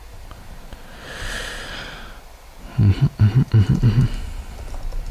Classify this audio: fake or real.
real